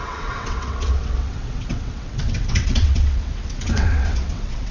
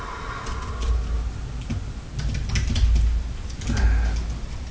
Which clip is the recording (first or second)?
second